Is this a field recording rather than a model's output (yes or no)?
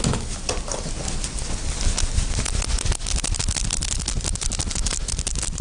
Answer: yes